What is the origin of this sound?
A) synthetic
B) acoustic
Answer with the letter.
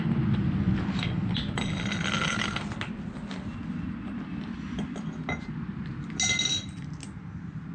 B